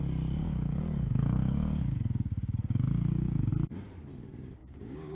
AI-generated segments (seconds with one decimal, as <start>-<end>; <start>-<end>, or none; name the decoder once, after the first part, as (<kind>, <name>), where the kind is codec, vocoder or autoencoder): 0.4-3.5 (codec, DAC); 4.6-5.2